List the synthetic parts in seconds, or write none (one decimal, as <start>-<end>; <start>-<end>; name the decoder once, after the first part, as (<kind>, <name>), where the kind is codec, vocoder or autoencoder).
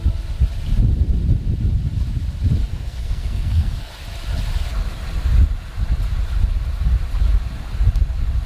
2.6-3.9 (codec, SNAC)